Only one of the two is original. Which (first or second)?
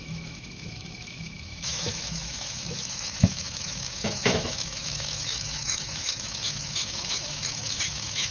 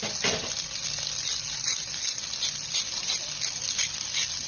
second